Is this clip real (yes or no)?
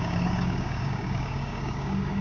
no